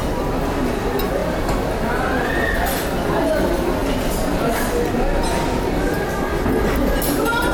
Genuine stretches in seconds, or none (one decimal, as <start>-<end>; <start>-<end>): 0.0-7.5